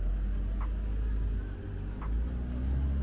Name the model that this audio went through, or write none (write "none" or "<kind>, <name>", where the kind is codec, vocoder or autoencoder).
none